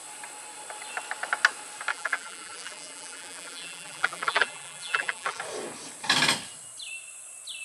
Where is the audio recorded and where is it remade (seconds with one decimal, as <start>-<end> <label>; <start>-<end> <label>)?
0.0-1.9 recorded; 1.9-5.4 remade; 5.4-7.6 recorded